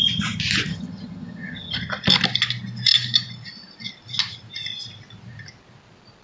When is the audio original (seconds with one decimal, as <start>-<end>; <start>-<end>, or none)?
0.0-0.7; 1.8-6.2